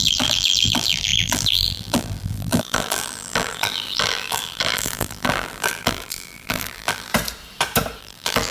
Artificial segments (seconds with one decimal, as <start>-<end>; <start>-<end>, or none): 0.0-7.1; 8.0-8.5